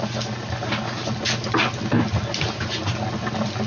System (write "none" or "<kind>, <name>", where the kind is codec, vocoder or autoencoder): none